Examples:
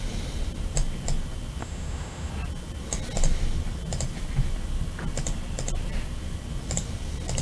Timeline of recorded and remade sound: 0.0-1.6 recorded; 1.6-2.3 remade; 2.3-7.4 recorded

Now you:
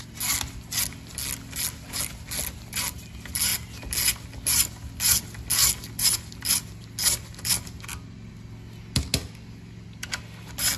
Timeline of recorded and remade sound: 0.0-10.8 recorded

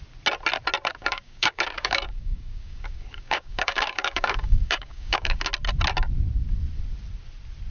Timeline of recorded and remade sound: 0.0-0.9 recorded; 0.9-5.5 remade; 5.5-7.7 recorded

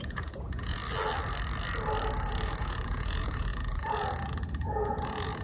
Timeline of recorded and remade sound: 0.0-0.8 remade; 0.8-2.6 recorded; 2.6-5.4 remade

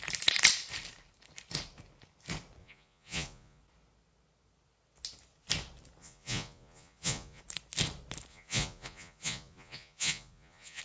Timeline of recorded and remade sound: 0.0-2.6 recorded; 2.6-3.6 remade; 3.6-6.0 recorded; 6.0-7.4 remade; 7.4-8.3 recorded; 8.3-10.8 remade

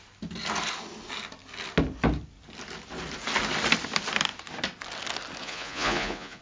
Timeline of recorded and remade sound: 0.0-5.4 recorded; 5.4-6.4 remade

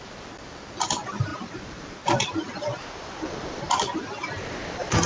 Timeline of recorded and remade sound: 0.0-1.3 recorded; 1.3-4.4 remade; 4.4-5.1 recorded

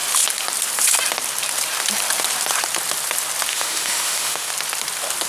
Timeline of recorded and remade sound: 0.0-3.5 recorded; 3.5-4.5 remade; 4.5-5.3 recorded